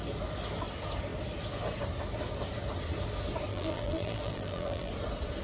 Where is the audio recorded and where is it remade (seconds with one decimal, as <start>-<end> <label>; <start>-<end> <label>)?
0.0-3.5 recorded; 3.5-4.9 remade; 4.9-5.4 recorded